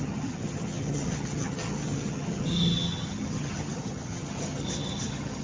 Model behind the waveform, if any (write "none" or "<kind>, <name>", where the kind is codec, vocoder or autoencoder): vocoder, HiFi-GAN